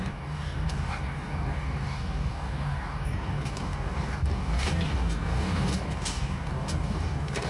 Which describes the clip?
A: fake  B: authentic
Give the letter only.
A